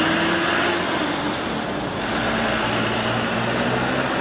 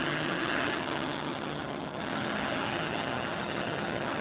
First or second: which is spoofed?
second